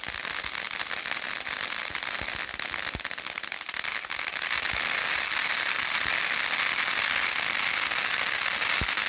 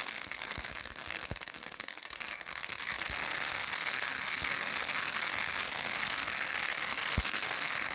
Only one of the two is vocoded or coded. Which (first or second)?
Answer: second